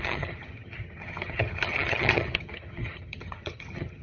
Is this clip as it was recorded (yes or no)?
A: no